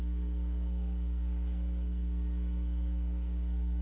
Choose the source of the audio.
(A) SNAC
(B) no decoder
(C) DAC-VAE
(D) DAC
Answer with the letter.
A